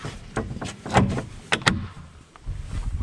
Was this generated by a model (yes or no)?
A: no